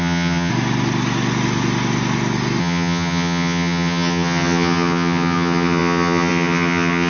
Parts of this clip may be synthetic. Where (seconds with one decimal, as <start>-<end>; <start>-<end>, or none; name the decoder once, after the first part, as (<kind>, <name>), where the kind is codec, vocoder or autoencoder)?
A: 0.0-0.5 (vocoder, HiFi-GAN); 2.6-7.1